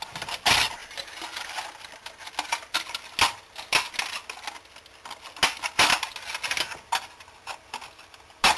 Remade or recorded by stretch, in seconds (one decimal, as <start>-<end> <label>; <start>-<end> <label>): 0.0-8.6 recorded